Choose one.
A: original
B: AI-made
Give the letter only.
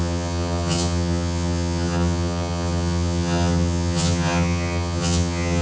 B